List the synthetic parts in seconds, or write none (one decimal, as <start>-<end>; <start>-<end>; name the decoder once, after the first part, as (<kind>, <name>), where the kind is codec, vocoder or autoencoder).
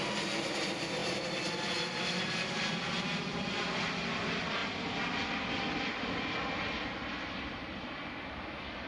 none